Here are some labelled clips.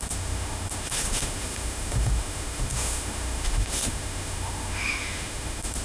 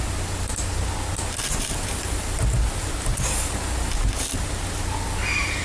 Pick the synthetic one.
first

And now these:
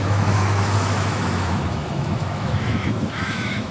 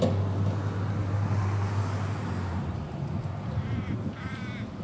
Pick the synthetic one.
first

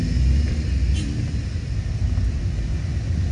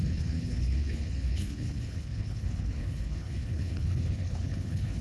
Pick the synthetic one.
second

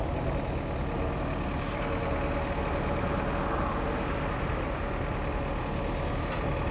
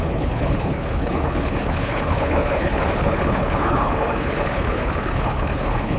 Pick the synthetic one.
second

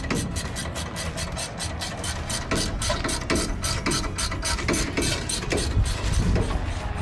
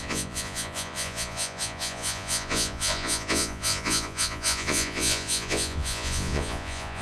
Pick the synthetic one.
second